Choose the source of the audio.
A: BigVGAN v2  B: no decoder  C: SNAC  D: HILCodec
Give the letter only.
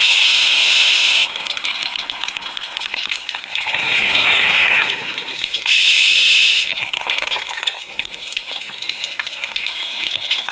C